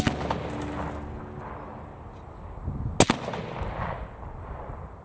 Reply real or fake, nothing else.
real